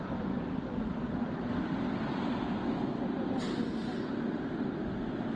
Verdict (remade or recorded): recorded